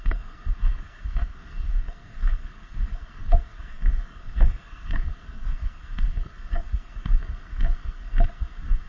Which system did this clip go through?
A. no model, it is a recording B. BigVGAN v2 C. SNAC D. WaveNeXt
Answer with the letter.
C